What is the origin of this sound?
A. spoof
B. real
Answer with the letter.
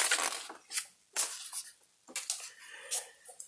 B